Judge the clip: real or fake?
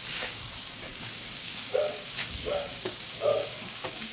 fake